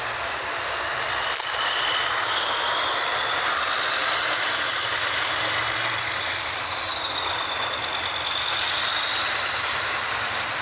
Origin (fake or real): real